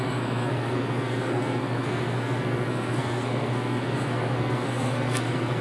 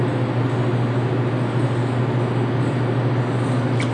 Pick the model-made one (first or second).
first